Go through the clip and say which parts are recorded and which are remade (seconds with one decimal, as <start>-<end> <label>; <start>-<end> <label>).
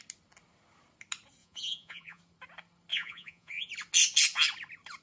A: 0.0-1.4 recorded; 1.4-2.2 remade; 2.2-2.9 recorded; 2.9-3.7 remade; 3.7-5.0 recorded